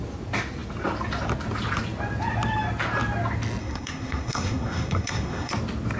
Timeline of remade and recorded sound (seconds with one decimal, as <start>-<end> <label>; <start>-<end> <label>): 0.0-3.6 recorded; 3.6-5.5 remade; 5.5-6.0 recorded